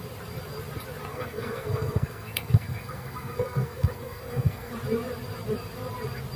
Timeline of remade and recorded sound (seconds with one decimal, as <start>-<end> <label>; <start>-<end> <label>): 0.0-1.1 recorded; 1.1-4.7 remade; 4.7-6.4 recorded